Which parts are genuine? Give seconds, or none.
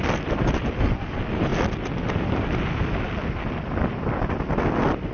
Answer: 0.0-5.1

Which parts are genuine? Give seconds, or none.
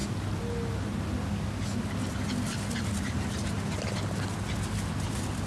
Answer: 0.0-5.5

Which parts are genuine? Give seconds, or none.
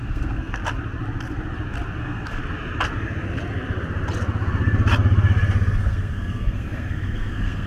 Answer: 0.6-2.0; 2.4-5.7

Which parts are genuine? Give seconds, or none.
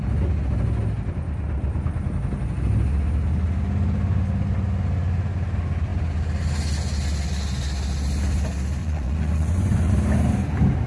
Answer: 0.0-8.8; 9.9-10.9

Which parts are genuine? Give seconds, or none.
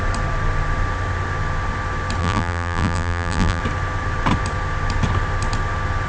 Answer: 0.0-2.2; 3.6-6.1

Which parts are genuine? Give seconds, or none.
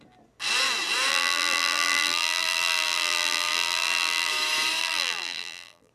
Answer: 0.0-1.1; 4.3-4.8